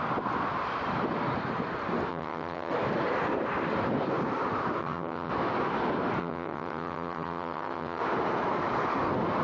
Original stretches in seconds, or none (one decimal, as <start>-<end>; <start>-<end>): 0.0-2.1; 2.7-4.8; 5.3-6.2; 8.0-9.4